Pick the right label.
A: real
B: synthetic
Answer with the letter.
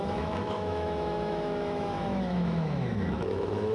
B